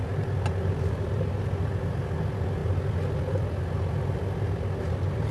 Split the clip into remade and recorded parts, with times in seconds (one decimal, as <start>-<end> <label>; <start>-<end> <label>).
0.0-5.3 recorded